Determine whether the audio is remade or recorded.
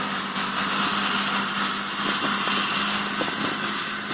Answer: recorded